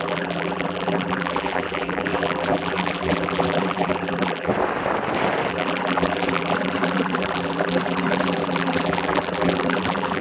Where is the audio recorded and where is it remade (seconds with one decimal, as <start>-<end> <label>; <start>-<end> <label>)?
0.0-4.5 remade; 4.5-5.5 recorded; 5.5-10.2 remade